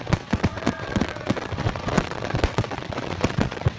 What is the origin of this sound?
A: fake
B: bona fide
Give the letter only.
A